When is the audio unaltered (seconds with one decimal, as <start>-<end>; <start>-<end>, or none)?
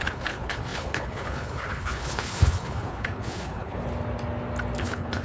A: 3.8-4.8